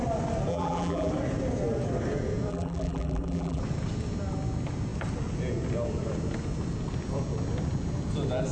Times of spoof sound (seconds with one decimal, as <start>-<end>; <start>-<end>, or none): 0.5-1.1; 2.5-3.6